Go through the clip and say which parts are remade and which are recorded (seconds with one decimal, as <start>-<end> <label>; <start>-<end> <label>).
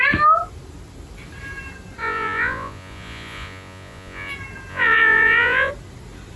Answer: 0.0-2.0 recorded; 2.0-4.3 remade; 4.3-4.7 recorded; 4.7-5.7 remade; 5.7-6.4 recorded